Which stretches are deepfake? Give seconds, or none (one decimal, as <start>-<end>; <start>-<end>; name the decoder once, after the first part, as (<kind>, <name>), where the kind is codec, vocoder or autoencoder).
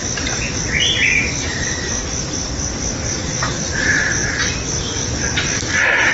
4.2-5.0 (vocoder, BigVGAN v2)